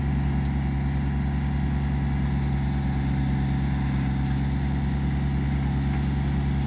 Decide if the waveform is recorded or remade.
recorded